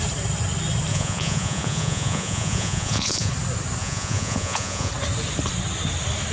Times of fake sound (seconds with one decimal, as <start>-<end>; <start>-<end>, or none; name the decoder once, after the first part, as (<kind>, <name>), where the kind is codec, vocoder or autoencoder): 0.9-3.3 (vocoder, Vocos); 3.8-4.9